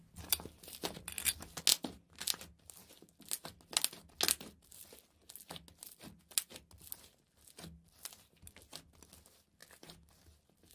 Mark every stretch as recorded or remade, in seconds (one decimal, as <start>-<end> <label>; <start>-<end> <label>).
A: 0.0-10.7 recorded